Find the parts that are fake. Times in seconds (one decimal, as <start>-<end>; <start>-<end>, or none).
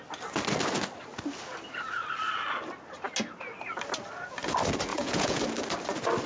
4.9-5.4